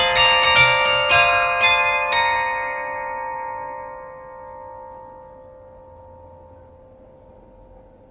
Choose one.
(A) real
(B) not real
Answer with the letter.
A